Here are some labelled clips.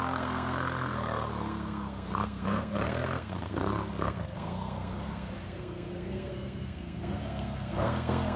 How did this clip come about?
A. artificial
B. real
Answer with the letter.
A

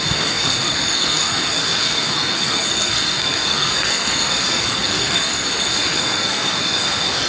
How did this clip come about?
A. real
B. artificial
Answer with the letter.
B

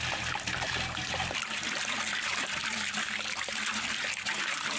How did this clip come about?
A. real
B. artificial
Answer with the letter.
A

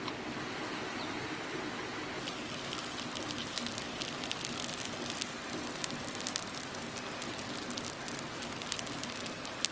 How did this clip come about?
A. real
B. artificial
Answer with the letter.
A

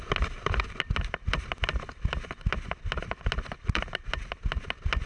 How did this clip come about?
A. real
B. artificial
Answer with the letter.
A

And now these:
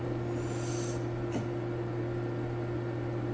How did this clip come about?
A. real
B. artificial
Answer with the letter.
A